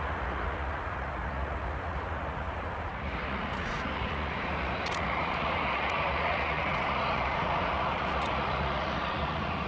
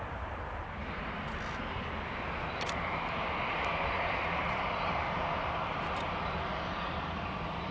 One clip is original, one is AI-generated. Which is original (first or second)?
second